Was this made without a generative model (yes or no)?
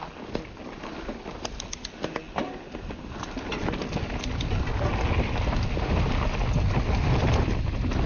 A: yes